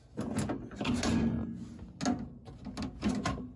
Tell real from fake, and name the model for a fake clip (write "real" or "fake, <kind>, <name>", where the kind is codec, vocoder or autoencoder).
real